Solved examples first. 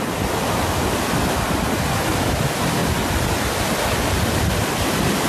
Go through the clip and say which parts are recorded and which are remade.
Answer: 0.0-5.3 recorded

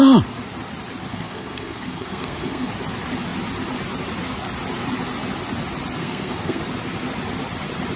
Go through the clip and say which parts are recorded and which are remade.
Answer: 0.0-1.1 recorded; 1.1-2.7 remade; 2.7-6.0 recorded; 6.0-6.6 remade; 6.6-8.0 recorded

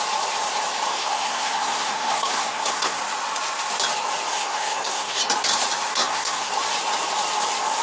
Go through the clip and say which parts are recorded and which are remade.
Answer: 0.0-0.9 recorded; 0.9-3.0 remade; 3.0-4.3 recorded; 4.3-5.2 remade; 5.2-5.9 recorded; 5.9-6.5 remade; 6.5-7.8 recorded

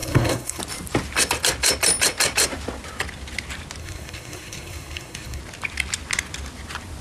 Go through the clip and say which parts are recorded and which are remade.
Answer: 0.0-0.6 remade; 0.6-3.8 recorded; 3.8-5.4 remade; 5.4-7.0 recorded